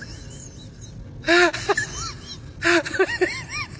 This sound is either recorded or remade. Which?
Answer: recorded